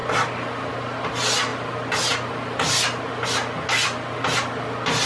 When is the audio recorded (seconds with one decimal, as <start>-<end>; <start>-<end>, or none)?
0.0-5.1